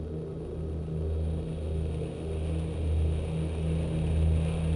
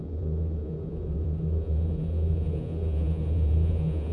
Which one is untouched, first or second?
first